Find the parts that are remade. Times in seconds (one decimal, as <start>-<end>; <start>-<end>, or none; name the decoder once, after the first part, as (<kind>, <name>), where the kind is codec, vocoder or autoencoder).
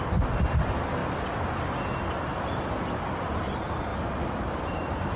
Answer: 0.0-1.0 (vocoder, BigVGAN v2); 2.0-3.9; 4.6-5.2